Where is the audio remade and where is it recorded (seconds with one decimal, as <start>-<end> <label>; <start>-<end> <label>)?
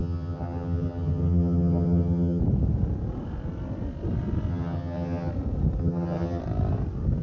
0.0-2.4 remade; 2.4-4.5 recorded; 4.5-5.3 remade; 5.3-5.8 recorded; 5.8-6.4 remade; 6.4-7.2 recorded